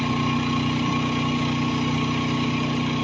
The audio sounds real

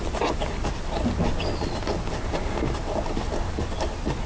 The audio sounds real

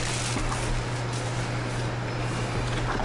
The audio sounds real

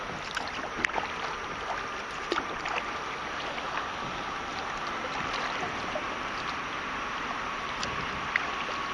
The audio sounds real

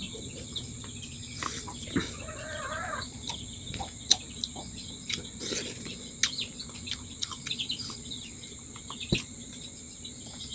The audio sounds real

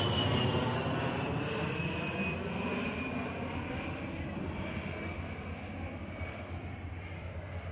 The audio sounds real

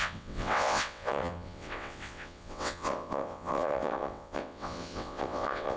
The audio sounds fake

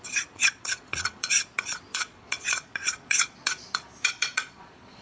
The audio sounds fake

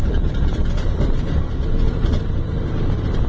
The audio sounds fake